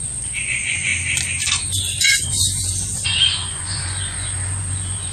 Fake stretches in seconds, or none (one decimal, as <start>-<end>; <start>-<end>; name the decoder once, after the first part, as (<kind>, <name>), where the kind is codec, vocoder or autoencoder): 0.0-0.9 (vocoder, Vocos); 1.5-5.1